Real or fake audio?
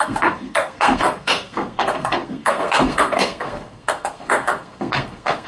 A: fake